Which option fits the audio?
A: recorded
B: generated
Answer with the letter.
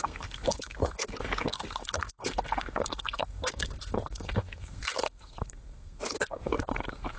B